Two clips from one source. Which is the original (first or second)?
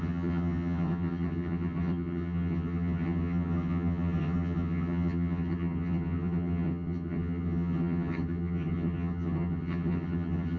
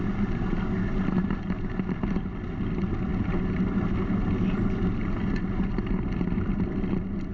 second